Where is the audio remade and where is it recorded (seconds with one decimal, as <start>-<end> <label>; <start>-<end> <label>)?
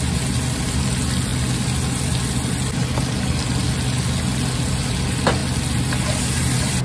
0.0-6.8 recorded